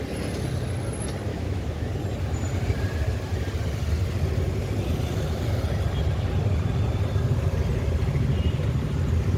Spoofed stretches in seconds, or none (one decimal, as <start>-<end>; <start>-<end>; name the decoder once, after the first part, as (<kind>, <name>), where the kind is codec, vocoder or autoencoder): 1.3-1.9 (autoencoder, DAC-VAE)